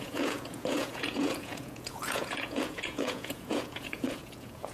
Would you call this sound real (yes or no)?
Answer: no